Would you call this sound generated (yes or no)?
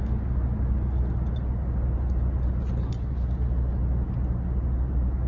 no